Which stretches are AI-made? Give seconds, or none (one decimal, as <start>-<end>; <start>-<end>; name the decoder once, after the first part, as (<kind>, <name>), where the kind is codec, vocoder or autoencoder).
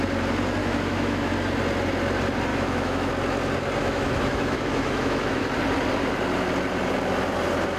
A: 0.6-1.3 (autoencoder, DAC-VAE); 2.5-3.1; 3.8-5.4